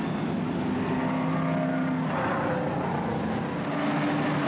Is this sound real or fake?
real